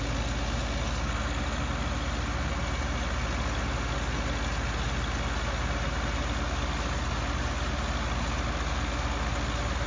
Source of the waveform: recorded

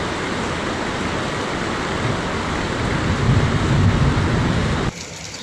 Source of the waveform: recorded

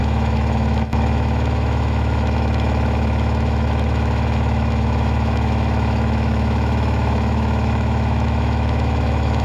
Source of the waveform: remade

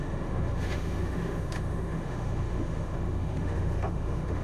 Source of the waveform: remade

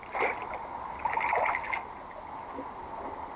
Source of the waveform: recorded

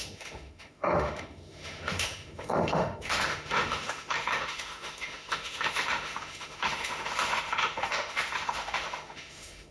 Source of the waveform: remade